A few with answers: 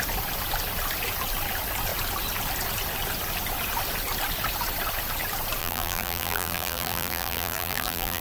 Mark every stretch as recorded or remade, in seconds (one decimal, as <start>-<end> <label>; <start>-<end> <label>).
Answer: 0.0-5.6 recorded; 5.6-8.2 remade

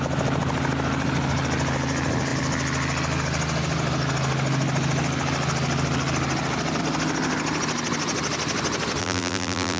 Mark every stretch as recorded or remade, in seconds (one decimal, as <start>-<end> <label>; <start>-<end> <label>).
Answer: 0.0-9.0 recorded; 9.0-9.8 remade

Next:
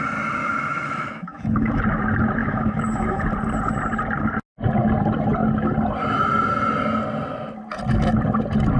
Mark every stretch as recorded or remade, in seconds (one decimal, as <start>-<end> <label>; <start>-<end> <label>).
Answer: 0.0-0.4 recorded; 0.4-1.8 remade; 1.8-2.4 recorded; 2.4-3.2 remade; 3.2-8.8 recorded

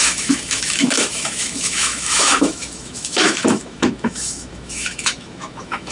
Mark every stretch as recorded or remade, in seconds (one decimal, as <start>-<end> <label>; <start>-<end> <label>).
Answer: 0.0-5.9 remade